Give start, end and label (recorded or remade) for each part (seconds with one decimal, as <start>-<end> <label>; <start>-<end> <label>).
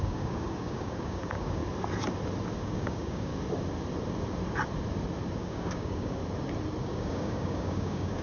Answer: 0.0-1.6 remade; 1.6-2.6 recorded; 2.6-3.3 remade; 3.3-5.4 recorded; 5.4-6.2 remade; 6.2-6.8 recorded; 6.8-8.2 remade